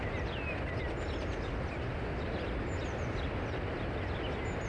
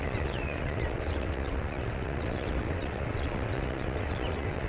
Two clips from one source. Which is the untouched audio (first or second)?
first